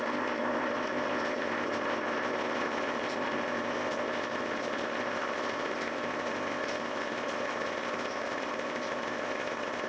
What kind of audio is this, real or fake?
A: fake